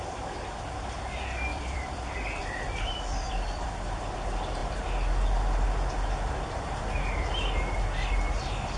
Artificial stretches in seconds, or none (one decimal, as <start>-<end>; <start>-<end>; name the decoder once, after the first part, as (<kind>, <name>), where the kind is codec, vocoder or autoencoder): 1.5-3.7 (vocoder, BigVGAN v2)